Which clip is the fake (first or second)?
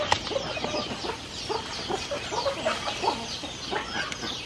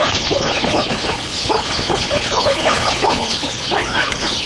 second